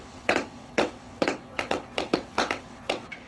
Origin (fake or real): fake